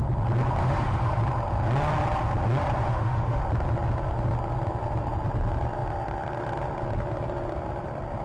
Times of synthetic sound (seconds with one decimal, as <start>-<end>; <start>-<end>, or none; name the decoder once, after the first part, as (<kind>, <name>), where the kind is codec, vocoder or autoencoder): 0.6-1.2 (autoencoder, DAC-VAE); 2.8-3.4